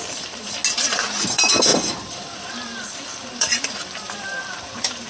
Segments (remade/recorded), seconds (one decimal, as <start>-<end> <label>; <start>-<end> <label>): 0.0-0.6 remade; 0.6-1.2 recorded; 1.2-5.1 remade